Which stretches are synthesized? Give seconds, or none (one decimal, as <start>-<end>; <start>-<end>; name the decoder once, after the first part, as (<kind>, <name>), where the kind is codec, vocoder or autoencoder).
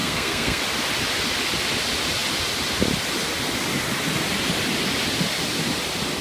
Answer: 0.0-0.6 (codec, SNAC)